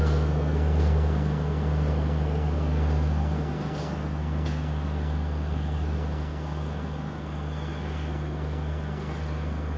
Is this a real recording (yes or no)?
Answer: no